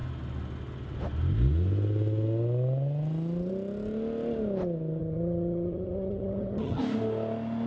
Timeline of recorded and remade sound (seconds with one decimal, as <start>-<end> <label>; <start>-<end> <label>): 0.0-5.0 recorded; 5.0-6.8 remade; 6.8-7.7 recorded